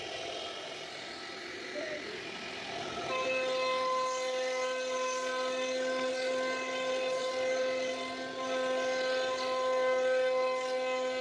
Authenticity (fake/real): real